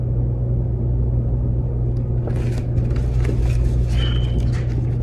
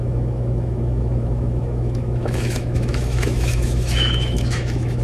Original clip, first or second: first